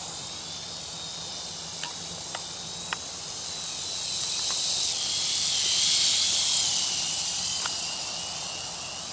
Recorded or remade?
recorded